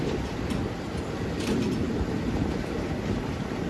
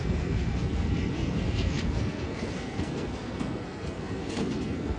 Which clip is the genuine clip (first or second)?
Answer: first